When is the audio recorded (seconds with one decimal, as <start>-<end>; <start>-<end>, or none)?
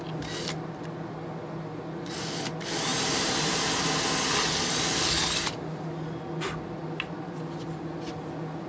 0.0-2.9; 3.8-8.7